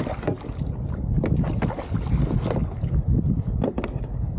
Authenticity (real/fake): real